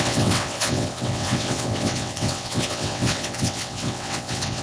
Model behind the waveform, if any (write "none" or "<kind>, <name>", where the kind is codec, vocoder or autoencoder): vocoder, WaveNeXt